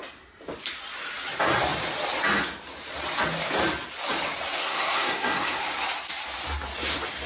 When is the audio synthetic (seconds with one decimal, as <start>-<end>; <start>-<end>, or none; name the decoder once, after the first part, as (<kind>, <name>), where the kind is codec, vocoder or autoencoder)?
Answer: 4.6-5.6 (codec, SNAC)